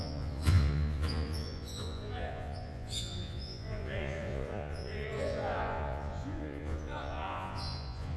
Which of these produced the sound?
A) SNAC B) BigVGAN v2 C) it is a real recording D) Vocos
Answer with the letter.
D